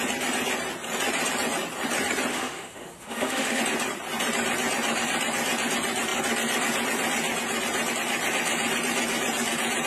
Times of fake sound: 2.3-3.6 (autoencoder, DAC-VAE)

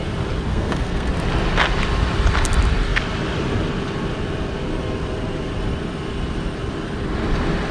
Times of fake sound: 0.5-1.1 (codec, SNAC)

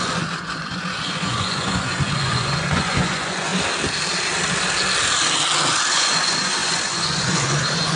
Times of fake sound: 0.0-3.5 (vocoder, Vocos); 5.9-8.0

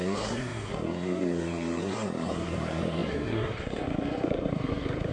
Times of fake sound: 0.0-5.1 (codec, SNAC)

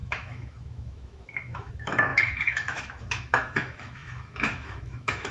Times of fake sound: 0.0-5.3 (autoencoder, DAC-VAE)

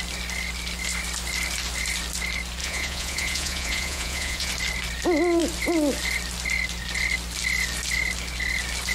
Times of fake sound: 2.6-4.5 (vocoder, Vocos)